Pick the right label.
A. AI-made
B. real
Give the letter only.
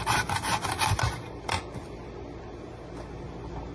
B